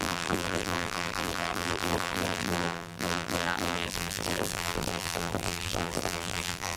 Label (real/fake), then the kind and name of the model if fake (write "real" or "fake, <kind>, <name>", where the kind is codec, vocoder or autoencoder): fake, vocoder, BigVGAN v2